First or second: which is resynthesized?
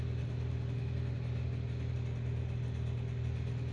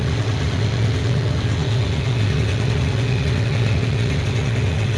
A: second